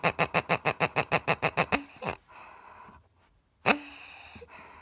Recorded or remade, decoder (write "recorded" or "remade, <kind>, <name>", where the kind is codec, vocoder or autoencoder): recorded